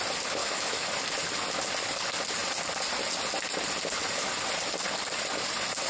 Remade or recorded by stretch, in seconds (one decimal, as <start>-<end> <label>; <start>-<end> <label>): 0.0-0.4 recorded; 0.4-0.9 remade; 0.9-5.9 recorded